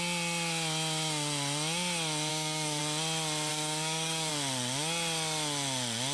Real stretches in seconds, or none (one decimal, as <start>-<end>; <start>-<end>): 0.0-2.3; 2.8-3.5; 4.3-6.1